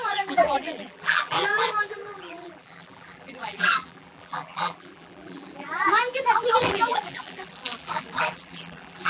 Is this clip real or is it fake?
fake